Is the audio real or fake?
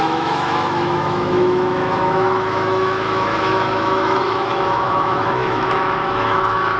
fake